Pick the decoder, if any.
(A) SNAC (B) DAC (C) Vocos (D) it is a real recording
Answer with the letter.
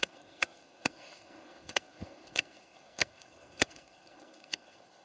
A